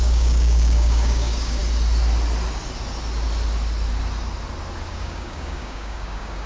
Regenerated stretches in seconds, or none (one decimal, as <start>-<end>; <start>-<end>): 0.0-1.6; 4.9-6.5